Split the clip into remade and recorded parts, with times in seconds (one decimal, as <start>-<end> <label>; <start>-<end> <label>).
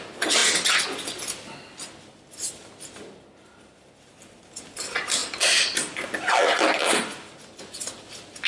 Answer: 0.0-8.5 recorded